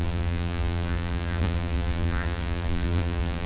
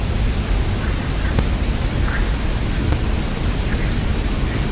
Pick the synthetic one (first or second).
first